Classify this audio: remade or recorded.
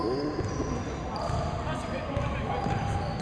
recorded